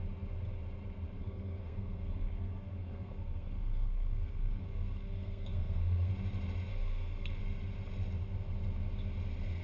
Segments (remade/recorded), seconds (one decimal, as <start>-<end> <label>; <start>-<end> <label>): 0.0-1.2 recorded; 1.2-6.1 remade; 6.1-6.7 recorded; 6.7-7.4 remade; 7.4-9.6 recorded